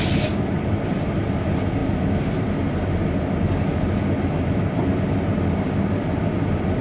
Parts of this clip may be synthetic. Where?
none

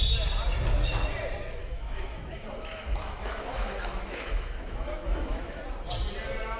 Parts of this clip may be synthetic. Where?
1.6-5.6 (autoencoder, DAC-VAE)

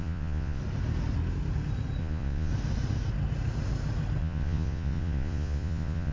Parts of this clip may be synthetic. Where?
0.0-0.6 (vocoder, Vocos); 2.0-2.5; 4.2-6.1

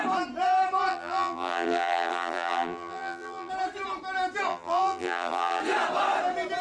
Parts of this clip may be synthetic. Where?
0.9-3.5 (vocoder, BigVGAN v2); 4.5-5.6

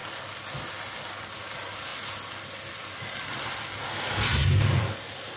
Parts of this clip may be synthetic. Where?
none

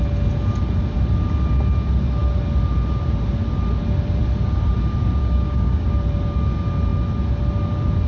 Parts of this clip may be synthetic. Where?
5.2-5.9 (codec, DAC)